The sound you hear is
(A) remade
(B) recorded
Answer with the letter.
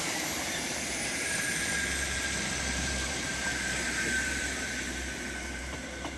A